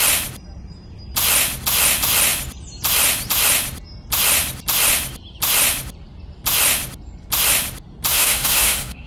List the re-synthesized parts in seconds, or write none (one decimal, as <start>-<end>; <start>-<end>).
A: 8.1-9.1